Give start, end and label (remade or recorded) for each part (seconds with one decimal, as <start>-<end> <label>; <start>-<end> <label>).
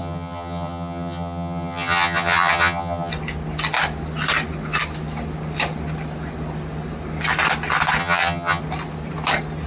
0.0-3.1 remade; 3.1-8.0 recorded; 8.0-8.6 remade; 8.6-9.7 recorded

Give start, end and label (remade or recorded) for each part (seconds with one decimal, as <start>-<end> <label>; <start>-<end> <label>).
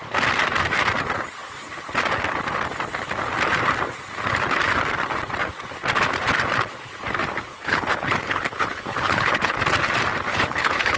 0.0-7.5 recorded; 7.5-9.6 remade; 9.6-10.3 recorded; 10.3-11.0 remade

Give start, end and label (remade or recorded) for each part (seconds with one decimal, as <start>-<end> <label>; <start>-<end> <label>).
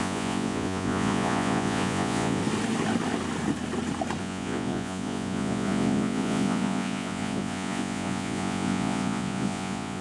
0.0-2.4 remade; 2.4-4.2 recorded; 4.2-10.0 remade